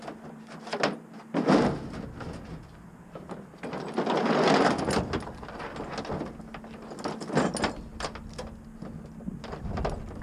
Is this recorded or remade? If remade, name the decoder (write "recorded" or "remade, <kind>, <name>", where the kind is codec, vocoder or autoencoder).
recorded